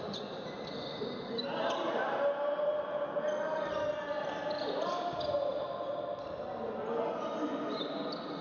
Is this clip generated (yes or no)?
no